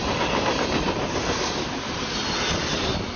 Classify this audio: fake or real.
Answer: real